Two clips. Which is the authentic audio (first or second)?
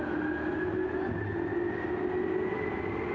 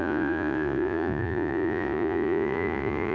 first